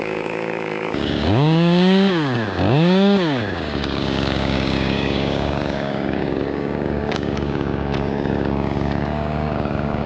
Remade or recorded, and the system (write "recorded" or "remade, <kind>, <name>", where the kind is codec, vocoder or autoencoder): remade, codec, DAC